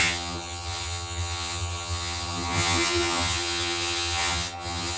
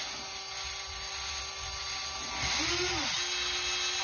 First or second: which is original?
second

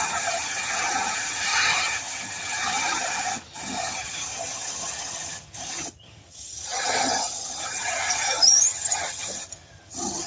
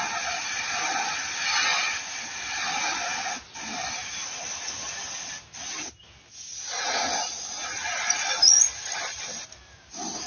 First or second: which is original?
second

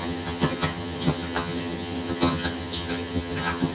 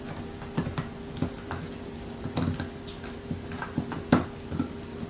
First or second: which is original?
second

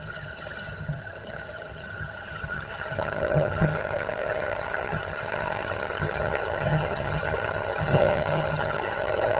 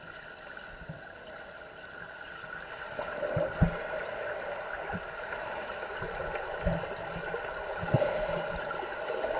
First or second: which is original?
second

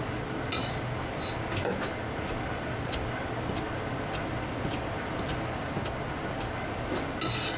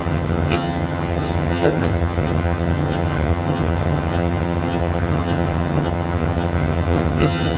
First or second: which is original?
first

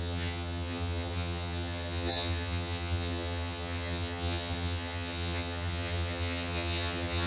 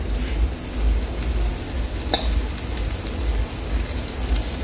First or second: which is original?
second